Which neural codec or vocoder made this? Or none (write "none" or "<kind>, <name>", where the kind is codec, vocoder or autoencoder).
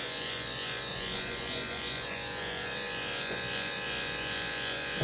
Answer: vocoder, Vocos